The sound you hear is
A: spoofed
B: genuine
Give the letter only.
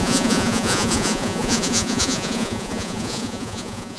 A